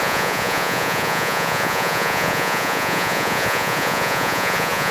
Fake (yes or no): yes